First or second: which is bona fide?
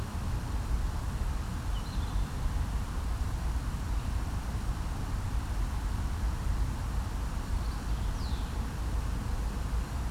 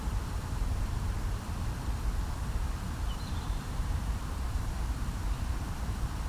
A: first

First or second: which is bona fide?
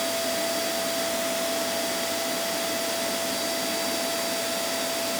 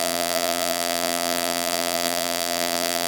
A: first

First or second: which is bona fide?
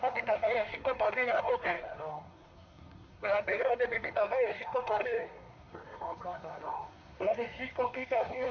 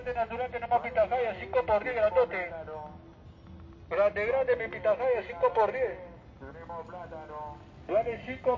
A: second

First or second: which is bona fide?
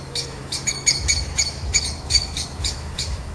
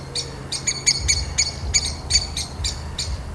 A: second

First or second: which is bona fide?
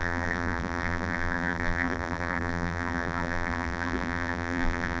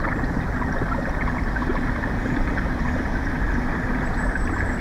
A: second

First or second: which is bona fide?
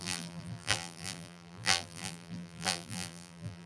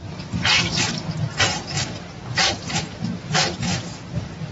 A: second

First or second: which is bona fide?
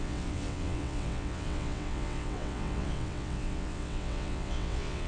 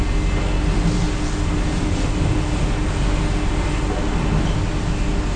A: second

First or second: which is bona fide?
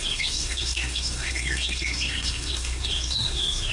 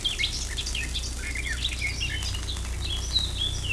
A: second